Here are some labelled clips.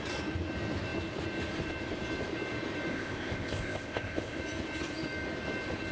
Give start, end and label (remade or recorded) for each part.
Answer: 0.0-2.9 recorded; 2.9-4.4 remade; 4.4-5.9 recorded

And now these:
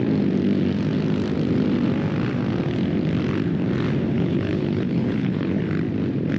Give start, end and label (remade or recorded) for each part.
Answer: 0.0-4.1 recorded; 4.1-5.6 remade; 5.6-6.4 recorded